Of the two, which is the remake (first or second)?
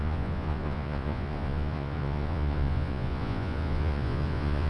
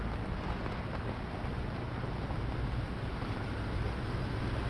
first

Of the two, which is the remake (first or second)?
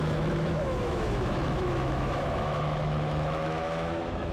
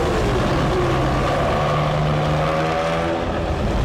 first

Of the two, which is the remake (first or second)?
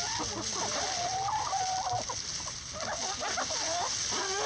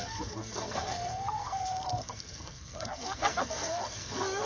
second